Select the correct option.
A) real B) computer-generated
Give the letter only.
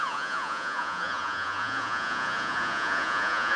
B